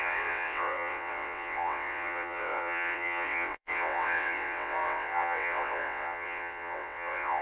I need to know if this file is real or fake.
fake